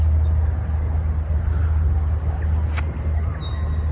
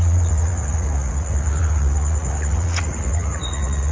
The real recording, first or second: first